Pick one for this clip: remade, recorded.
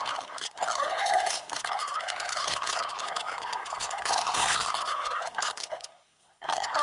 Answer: remade